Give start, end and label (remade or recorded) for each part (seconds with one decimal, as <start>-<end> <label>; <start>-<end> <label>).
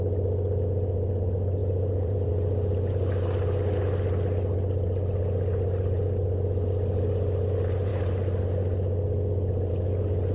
0.0-1.6 recorded; 1.6-2.3 remade; 2.3-10.3 recorded